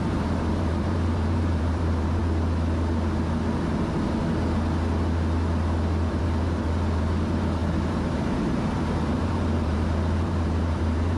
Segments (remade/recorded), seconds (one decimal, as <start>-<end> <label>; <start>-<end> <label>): 0.0-2.2 remade; 2.2-6.1 recorded; 6.1-11.2 remade